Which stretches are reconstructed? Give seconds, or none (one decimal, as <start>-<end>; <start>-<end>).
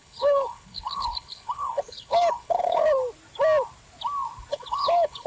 0.0-3.0; 4.5-5.3